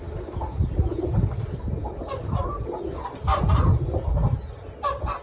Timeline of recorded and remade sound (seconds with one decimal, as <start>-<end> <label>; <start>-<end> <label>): 0.0-5.2 recorded